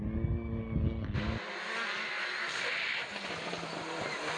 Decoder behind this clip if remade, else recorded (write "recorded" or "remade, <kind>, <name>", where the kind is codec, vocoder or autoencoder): recorded